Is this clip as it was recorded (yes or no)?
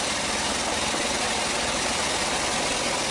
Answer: yes